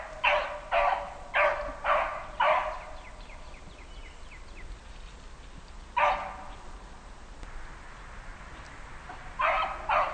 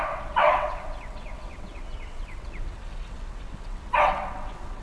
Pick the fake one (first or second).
second